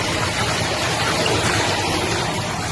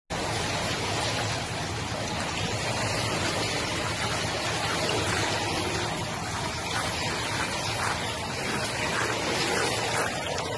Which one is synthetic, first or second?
first